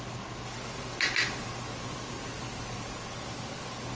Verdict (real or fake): real